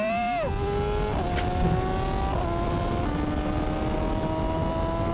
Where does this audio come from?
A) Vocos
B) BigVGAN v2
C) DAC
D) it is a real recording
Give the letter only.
D